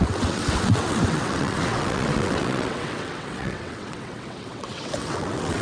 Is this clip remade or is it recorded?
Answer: remade